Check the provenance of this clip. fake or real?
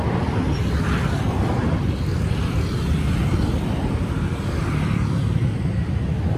real